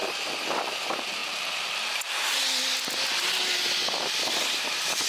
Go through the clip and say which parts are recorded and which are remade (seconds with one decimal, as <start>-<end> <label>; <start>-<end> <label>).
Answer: 0.0-0.6 recorded; 0.6-1.2 remade; 1.2-4.1 recorded; 4.1-5.1 remade